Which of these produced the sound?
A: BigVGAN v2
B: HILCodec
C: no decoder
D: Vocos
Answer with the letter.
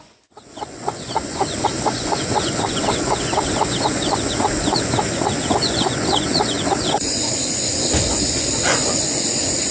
D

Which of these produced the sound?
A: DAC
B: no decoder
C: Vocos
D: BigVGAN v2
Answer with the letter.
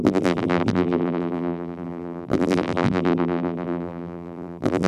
D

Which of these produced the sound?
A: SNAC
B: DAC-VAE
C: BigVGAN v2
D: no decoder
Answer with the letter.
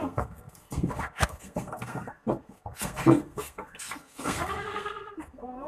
A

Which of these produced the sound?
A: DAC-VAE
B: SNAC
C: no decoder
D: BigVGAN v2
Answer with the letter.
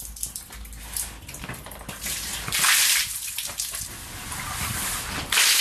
C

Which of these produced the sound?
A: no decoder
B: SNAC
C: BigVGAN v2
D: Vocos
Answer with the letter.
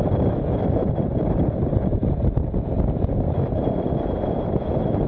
C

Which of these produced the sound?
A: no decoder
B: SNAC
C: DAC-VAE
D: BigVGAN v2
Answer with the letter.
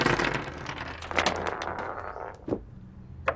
A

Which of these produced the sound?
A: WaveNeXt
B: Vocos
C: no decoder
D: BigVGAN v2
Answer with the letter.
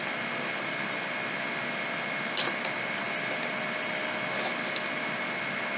C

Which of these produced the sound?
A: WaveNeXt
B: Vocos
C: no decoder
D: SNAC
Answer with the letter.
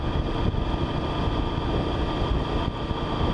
C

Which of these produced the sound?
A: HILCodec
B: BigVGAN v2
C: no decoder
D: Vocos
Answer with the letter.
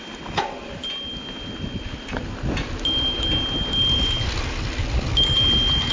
C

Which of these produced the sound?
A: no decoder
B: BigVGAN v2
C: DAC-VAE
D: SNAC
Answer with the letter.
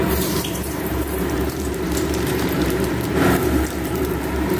B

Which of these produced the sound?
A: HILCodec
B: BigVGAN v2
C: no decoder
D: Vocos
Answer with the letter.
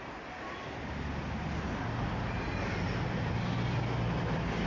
C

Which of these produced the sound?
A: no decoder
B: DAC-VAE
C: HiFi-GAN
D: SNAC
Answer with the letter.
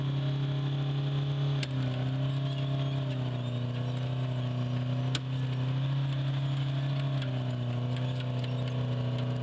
A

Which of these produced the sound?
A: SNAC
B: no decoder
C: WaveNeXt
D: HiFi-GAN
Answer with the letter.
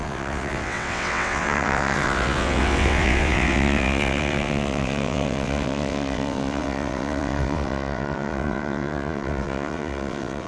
C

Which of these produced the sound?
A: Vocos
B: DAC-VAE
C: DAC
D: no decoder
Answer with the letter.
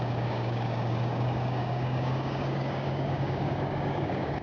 C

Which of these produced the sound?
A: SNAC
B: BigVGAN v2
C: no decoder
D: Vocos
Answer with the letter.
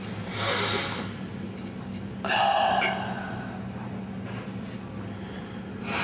C